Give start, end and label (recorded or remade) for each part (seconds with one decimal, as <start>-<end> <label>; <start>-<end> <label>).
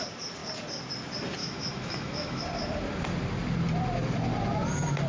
0.0-1.4 recorded; 1.4-2.4 remade; 2.4-5.1 recorded